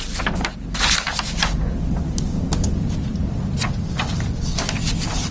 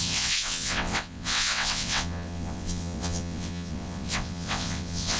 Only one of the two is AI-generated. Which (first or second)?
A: second